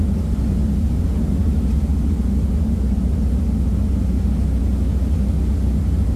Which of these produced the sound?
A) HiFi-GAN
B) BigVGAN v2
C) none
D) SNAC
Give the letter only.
C